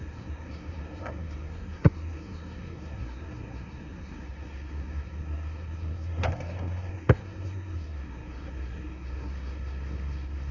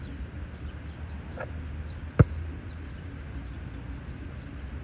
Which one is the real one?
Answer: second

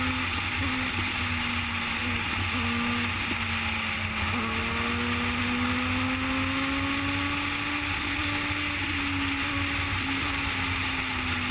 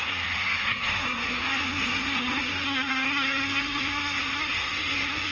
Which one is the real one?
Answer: first